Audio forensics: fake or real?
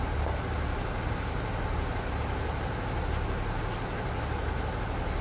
real